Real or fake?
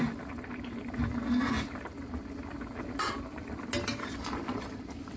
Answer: real